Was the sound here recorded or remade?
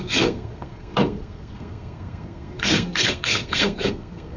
remade